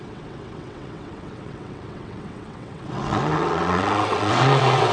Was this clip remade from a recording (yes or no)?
yes